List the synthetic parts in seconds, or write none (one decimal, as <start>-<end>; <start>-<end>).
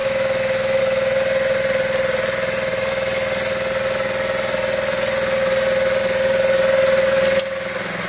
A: 0.0-0.8